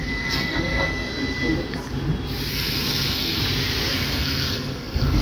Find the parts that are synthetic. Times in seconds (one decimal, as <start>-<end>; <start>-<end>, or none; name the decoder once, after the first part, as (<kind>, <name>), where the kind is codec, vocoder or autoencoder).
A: 0.0-1.1 (codec, SNAC); 2.5-3.4; 3.9-5.2